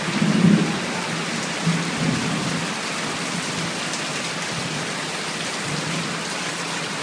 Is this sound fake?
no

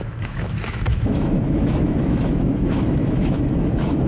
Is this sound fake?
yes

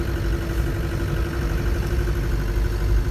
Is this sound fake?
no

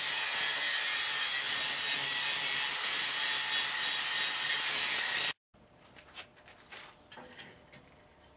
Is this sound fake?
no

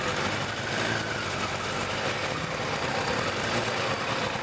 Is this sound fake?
no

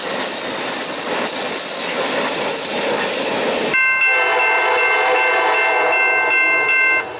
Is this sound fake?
no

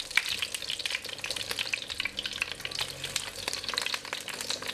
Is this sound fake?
no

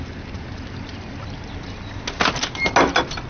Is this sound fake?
no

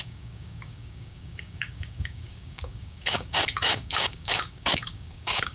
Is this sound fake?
yes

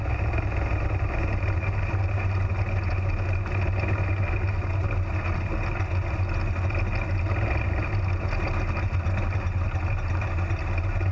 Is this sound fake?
no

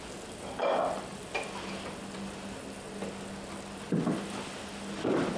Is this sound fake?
no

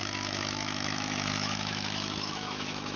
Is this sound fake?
yes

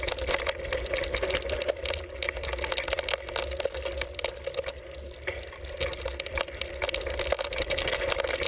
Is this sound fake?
no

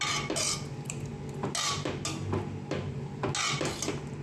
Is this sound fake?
no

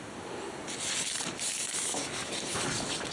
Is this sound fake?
no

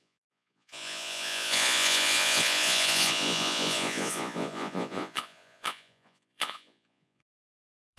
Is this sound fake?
yes